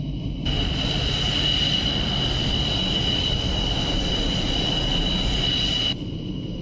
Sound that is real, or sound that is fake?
real